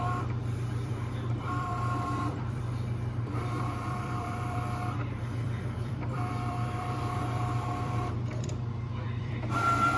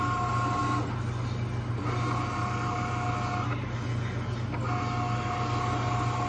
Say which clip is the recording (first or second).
second